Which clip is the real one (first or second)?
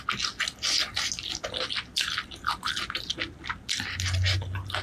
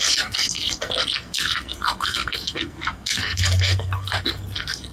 first